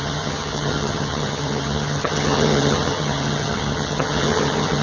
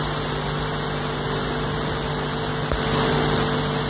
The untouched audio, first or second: second